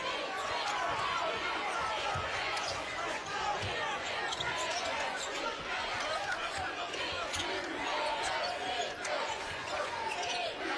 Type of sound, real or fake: fake